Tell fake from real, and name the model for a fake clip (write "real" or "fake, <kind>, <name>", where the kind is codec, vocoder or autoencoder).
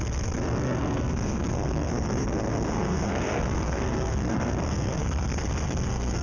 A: fake, codec, SNAC